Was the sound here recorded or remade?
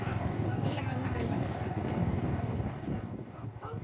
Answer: remade